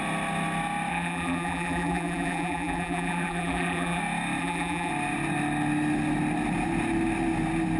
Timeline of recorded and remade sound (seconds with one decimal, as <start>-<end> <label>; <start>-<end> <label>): 0.0-0.9 recorded; 0.9-4.0 remade; 4.0-4.4 recorded; 4.4-4.9 remade; 4.9-7.8 recorded